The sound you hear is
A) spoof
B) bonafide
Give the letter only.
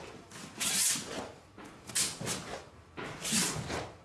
B